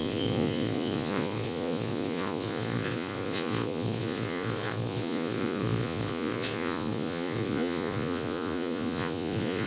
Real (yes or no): no